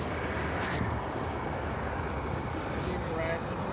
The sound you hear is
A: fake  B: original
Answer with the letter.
B